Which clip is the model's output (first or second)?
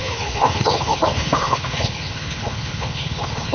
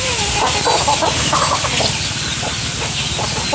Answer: first